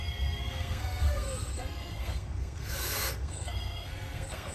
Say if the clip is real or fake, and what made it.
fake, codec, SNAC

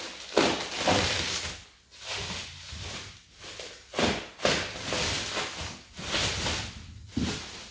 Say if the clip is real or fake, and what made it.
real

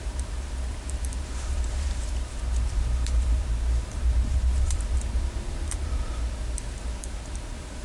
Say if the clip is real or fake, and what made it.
fake, vocoder, BigVGAN v2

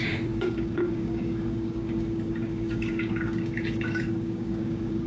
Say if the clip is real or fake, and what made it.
fake, codec, DAC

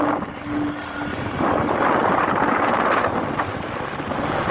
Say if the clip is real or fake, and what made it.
real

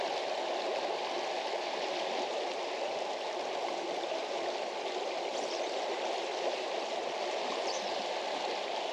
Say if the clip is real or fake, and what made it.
real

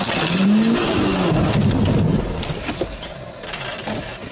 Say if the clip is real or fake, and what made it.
real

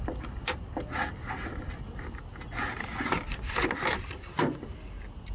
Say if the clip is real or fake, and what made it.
real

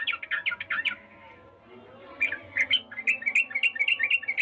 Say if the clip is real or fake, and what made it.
real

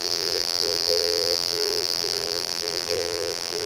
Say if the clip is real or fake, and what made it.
fake, vocoder, BigVGAN v2